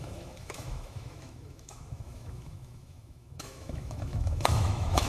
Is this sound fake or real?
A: fake